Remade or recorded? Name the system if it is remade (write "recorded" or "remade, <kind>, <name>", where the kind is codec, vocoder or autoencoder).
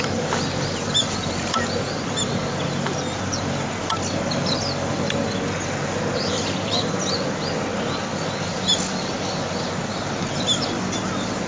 recorded